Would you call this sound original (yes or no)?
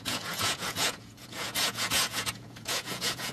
no